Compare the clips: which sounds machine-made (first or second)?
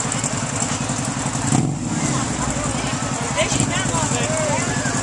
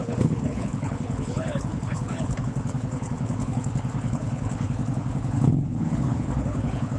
second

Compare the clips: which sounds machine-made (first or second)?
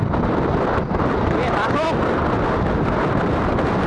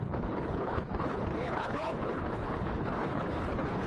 second